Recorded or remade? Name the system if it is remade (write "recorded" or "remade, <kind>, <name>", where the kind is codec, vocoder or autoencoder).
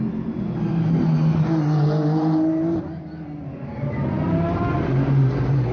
recorded